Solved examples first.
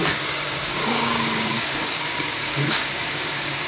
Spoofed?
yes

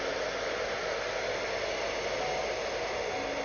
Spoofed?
no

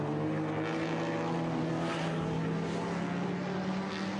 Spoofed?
no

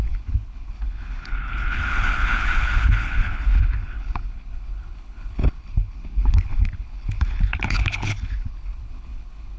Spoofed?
yes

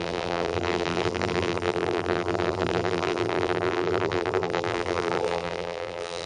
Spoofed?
yes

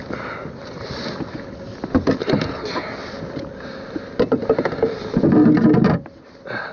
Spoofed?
no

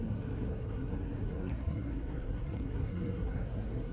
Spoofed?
yes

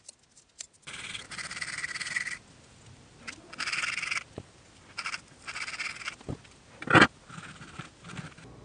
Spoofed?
no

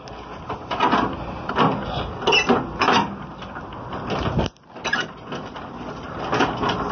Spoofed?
no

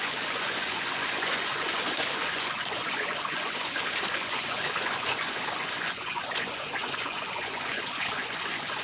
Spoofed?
yes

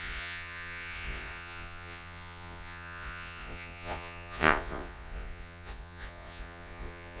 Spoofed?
yes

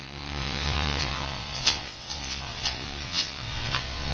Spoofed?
yes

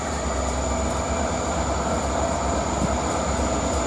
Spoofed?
no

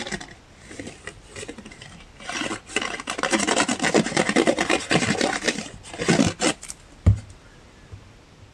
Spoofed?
no